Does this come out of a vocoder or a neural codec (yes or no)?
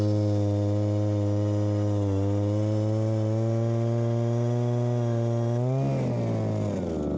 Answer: no